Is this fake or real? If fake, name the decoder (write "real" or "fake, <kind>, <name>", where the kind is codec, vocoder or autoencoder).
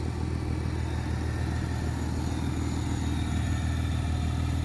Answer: real